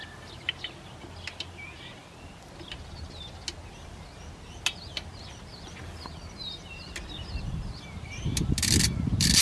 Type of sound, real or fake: real